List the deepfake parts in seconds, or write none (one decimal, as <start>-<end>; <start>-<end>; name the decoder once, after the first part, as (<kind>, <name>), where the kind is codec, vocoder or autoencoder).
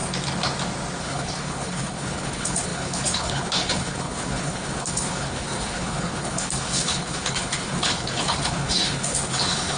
1.0-9.8 (codec, HILCodec)